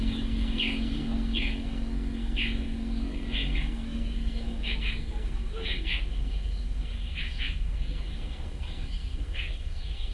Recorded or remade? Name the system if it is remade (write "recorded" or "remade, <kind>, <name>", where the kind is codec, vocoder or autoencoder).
remade, codec, SNAC